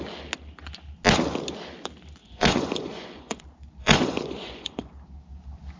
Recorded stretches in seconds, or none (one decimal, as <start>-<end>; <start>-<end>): 0.0-2.2; 3.4-3.8; 4.9-5.8